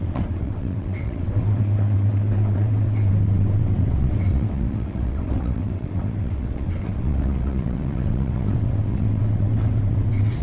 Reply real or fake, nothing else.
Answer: fake